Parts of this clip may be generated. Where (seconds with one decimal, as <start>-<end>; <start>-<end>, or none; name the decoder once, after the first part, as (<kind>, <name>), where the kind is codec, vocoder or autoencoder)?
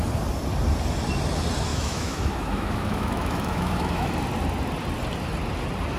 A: 1.7-4.1 (autoencoder, DAC-VAE)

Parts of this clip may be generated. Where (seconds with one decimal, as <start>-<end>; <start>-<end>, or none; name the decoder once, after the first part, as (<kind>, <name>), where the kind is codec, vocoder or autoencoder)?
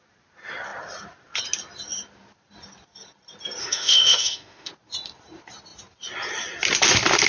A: 3.6-4.7 (autoencoder, DAC-VAE)